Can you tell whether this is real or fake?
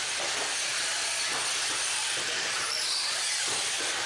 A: real